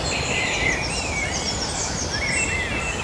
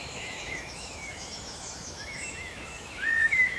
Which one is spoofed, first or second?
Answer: second